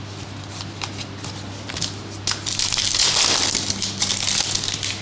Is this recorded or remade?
recorded